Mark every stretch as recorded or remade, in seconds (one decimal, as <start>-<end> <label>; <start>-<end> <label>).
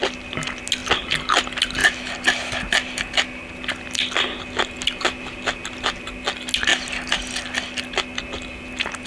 0.0-9.1 recorded